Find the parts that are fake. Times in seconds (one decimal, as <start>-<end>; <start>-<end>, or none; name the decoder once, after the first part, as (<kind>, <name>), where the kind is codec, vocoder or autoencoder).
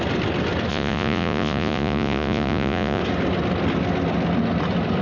0.7-3.0 (vocoder, Vocos)